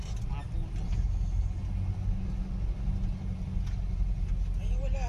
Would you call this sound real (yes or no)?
yes